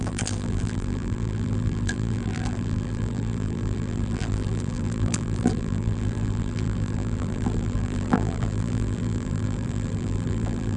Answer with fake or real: fake